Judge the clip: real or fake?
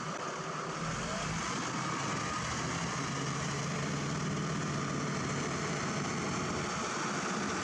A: real